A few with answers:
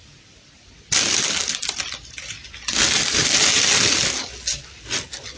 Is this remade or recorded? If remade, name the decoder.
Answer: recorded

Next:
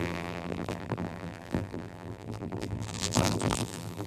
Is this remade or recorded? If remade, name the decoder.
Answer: remade, vocoder, BigVGAN v2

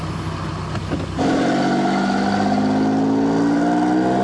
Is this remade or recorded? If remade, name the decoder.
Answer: recorded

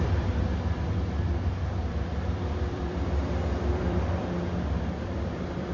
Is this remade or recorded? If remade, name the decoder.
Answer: remade, vocoder, BigVGAN v2